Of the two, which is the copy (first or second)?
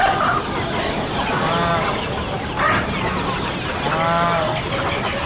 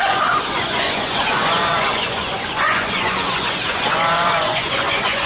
second